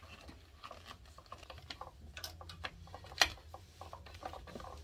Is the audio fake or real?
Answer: real